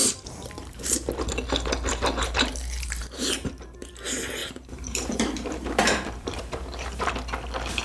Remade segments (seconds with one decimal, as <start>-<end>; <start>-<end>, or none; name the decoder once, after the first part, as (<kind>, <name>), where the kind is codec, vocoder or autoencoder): 0.0-1.2 (vocoder, BigVGAN v2); 1.9-3.9; 4.4-7.1